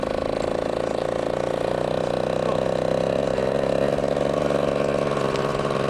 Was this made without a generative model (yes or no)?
yes